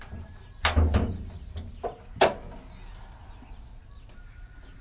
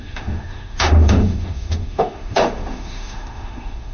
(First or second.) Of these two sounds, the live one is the first